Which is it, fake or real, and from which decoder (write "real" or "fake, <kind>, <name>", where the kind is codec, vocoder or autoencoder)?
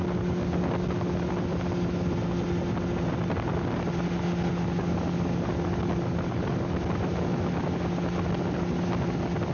real